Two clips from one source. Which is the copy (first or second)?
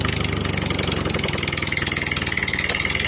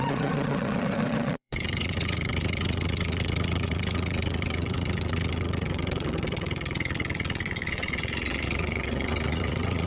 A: second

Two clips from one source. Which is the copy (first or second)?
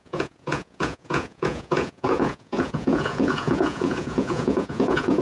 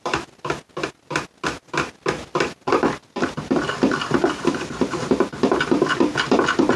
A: first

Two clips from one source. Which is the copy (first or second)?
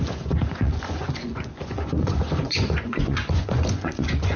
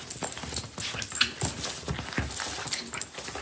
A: first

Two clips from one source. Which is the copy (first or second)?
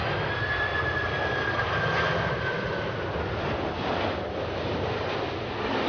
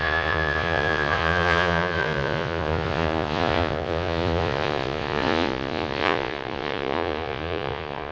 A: second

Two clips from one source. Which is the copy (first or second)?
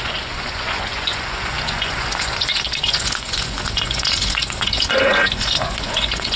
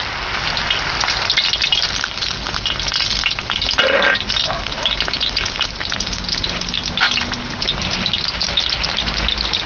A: first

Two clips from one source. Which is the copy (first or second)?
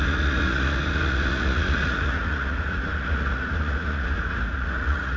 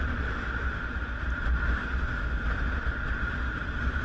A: first